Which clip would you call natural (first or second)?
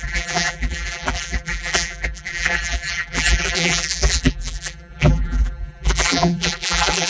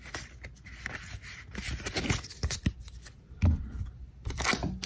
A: second